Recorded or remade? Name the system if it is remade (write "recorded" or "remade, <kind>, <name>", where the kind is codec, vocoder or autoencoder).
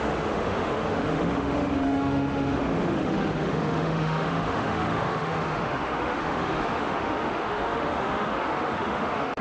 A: remade, autoencoder, DAC-VAE